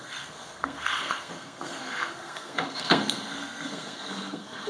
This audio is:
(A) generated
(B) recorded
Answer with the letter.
A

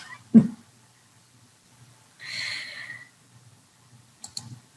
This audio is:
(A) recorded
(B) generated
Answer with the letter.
B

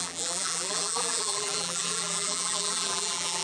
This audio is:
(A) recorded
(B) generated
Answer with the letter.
B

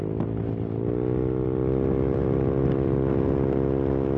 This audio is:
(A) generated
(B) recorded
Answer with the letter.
B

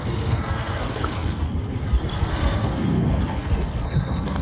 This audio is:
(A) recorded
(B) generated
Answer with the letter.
B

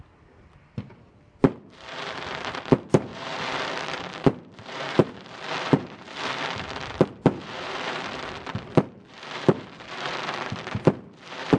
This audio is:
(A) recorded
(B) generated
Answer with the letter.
B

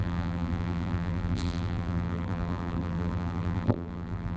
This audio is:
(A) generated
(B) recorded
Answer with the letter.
A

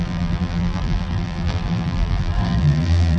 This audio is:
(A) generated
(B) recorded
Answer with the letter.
A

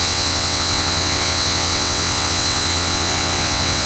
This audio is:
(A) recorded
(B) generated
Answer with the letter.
B